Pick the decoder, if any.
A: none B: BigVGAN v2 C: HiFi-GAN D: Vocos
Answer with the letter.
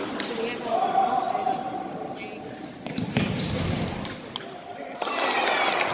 A